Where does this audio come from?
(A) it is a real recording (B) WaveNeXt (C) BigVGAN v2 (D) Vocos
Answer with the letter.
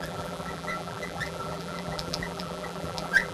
C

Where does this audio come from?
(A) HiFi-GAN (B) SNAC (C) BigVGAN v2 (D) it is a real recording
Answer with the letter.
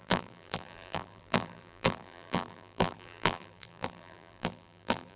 C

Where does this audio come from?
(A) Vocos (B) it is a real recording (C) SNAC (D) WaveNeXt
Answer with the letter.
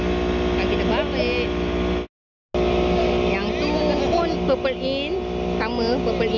B